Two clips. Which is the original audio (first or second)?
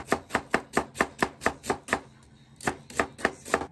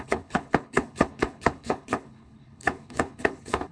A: first